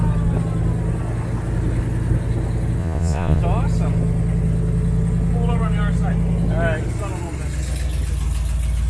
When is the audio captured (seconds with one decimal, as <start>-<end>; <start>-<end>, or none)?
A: 0.0-2.8; 3.4-8.9